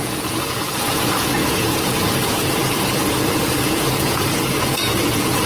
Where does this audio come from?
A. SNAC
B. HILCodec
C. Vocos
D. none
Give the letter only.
C